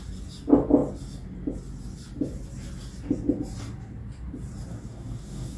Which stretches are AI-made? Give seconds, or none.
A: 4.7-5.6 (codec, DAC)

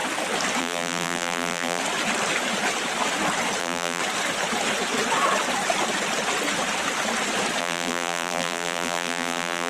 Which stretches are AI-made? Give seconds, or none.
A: 0.6-1.8 (vocoder, BigVGAN v2); 3.6-4.0; 7.6-9.7

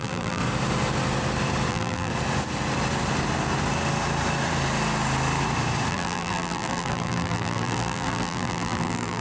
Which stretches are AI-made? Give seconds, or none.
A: 0.0-0.4 (vocoder, BigVGAN v2); 1.7-2.1; 5.9-9.2

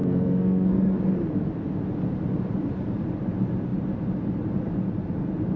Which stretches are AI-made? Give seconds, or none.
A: 0.0-1.0 (codec, SNAC)

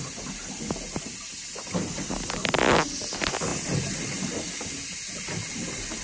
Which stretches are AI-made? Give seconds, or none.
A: none

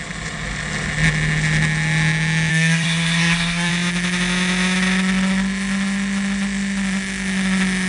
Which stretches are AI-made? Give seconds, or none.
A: 2.5-3.7 (codec, SNAC)

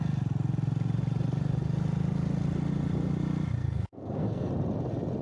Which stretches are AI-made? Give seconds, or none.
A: 3.6-4.5 (codec, SNAC)

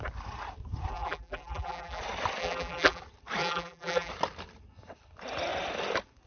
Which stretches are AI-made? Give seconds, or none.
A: 0.9-2.0 (vocoder, BigVGAN v2); 2.4-3.0; 3.4-4.1